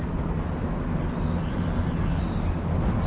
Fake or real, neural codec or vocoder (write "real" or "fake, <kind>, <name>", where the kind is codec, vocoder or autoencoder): real